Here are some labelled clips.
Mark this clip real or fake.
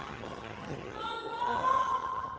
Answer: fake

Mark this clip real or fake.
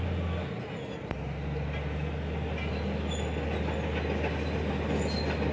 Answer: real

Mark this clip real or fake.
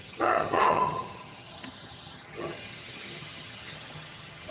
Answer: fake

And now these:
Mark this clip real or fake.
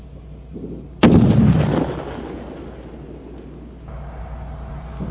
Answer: real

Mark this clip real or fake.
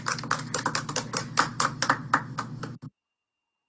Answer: real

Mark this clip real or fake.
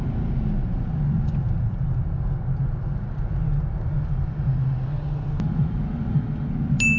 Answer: real